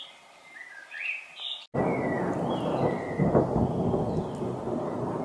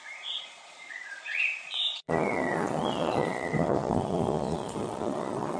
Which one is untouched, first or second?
first